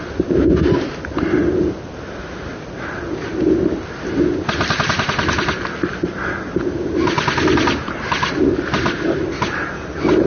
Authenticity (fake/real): real